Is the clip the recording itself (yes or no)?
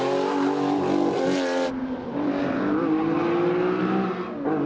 yes